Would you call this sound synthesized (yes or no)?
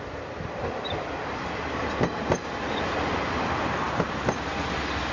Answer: no